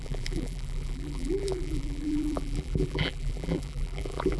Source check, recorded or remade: remade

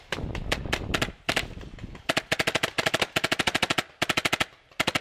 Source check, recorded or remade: recorded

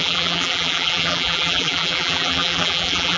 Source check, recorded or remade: remade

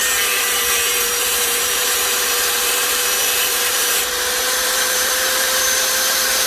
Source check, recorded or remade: remade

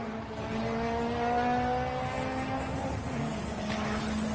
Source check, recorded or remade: recorded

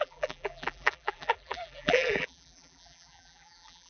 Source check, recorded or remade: remade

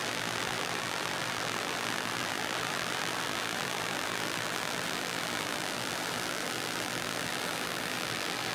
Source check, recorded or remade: remade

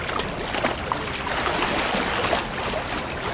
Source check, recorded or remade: recorded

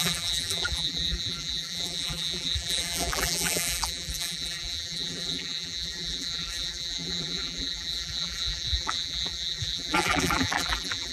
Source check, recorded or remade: remade